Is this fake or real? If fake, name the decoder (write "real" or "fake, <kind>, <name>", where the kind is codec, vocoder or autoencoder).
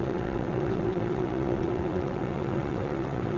fake, vocoder, WaveNeXt